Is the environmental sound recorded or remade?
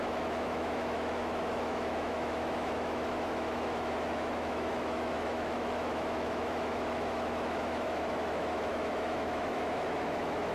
remade